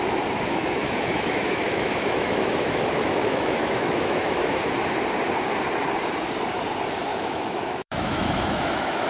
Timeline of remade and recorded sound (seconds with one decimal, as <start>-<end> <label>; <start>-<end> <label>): 0.0-0.6 recorded; 0.6-4.6 remade; 4.6-7.1 recorded; 7.1-9.1 remade